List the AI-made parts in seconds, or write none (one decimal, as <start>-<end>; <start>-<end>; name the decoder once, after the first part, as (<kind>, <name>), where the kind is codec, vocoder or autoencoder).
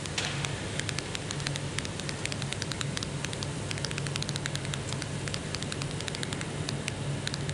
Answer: 2.5-3.0 (vocoder, BigVGAN v2)